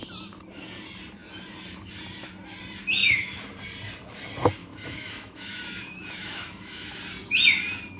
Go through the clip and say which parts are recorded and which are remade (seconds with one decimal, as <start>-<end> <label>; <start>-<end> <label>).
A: 0.0-3.0 recorded; 3.0-3.5 remade; 3.5-4.6 recorded; 4.6-7.0 remade; 7.0-8.0 recorded